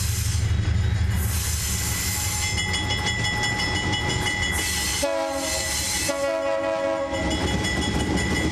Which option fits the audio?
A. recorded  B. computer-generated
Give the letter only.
A